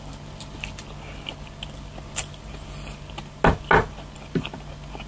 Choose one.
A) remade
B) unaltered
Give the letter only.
B